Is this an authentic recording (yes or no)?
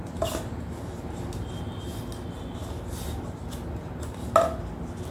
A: yes